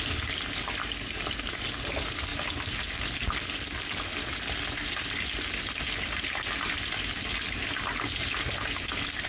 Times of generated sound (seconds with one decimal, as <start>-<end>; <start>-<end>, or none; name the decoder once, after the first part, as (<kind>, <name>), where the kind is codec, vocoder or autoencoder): none